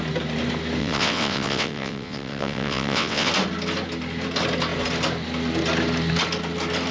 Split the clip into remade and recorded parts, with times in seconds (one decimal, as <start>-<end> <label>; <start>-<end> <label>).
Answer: 0.0-0.8 recorded; 0.8-3.3 remade; 3.3-6.9 recorded